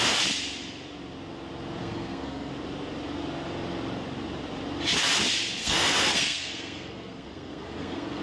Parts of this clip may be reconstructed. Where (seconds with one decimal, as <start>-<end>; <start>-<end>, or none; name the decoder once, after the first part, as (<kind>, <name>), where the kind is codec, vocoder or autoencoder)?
1.8-2.5 (codec, SNAC); 5.6-8.2